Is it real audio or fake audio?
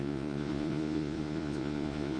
fake